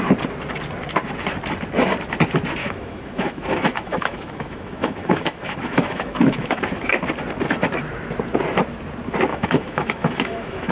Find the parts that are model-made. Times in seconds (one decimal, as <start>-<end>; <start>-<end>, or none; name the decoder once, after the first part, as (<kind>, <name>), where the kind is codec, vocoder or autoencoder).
2.6-6.6 (autoencoder, DAC-VAE); 9.3-10.7